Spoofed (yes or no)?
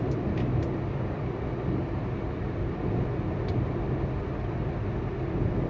yes